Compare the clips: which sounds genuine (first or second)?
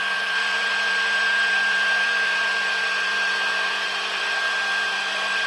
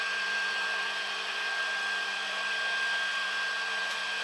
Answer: second